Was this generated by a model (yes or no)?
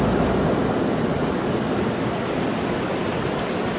no